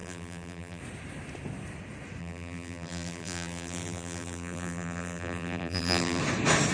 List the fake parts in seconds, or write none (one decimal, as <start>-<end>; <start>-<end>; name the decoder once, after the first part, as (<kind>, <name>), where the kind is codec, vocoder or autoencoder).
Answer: 0.0-0.8 (vocoder, BigVGAN v2); 2.2-6.2